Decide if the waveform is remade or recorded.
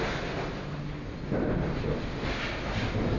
recorded